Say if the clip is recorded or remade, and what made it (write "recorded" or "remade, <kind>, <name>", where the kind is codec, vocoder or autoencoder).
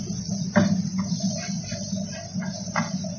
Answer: recorded